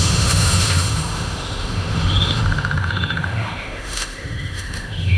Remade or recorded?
remade